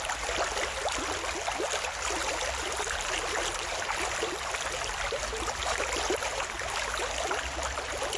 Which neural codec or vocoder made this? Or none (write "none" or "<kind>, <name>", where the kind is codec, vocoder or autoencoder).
none